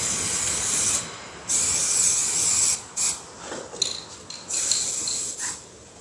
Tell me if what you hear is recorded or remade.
recorded